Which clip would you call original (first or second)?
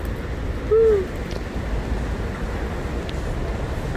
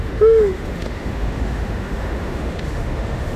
first